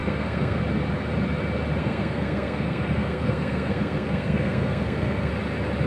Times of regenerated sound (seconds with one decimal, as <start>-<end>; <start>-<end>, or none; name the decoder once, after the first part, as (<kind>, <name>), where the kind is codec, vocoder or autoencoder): 0.0-0.6 (codec, SNAC); 1.8-5.3